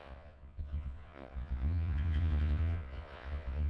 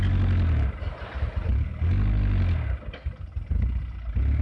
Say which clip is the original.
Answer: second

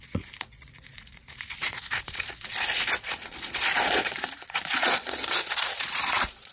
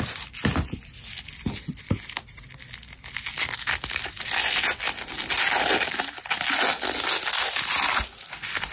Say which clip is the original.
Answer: second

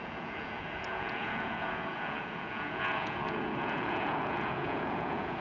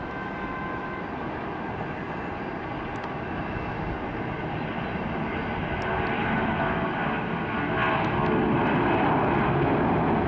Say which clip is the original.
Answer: second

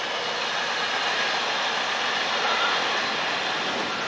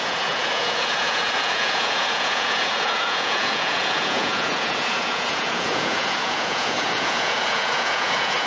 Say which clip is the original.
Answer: first